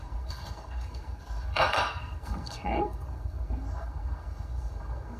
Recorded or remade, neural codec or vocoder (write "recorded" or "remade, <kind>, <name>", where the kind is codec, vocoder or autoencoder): remade, codec, SNAC